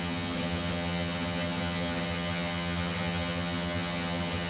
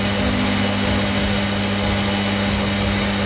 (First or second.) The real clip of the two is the second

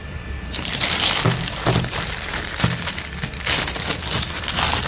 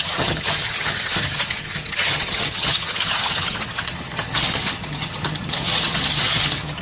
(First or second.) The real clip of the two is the first